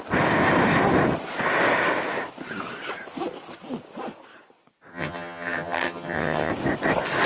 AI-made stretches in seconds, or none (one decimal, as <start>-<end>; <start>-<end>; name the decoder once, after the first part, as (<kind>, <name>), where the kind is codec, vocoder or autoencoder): 4.9-6.5 (vocoder, HiFi-GAN)

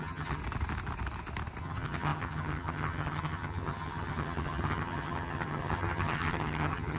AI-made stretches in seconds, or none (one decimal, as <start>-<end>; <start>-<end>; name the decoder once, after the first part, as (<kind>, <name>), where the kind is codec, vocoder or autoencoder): 0.0-0.4 (vocoder, HiFi-GAN); 1.6-7.0

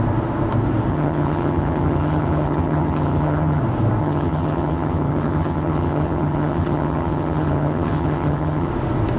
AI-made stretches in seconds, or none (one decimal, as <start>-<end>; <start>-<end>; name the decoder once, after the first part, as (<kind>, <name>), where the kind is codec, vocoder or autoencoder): 0.9-3.6 (vocoder, HiFi-GAN); 4.0-8.7